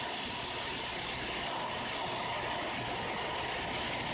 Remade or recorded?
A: recorded